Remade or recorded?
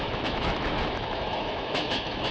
remade